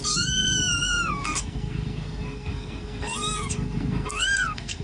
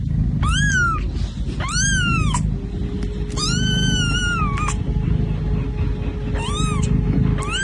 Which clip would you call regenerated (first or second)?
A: first